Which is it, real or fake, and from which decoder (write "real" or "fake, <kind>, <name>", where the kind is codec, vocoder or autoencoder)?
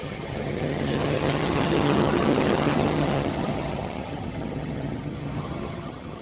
fake, vocoder, HiFi-GAN